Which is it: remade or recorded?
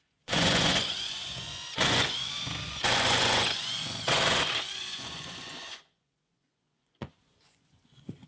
remade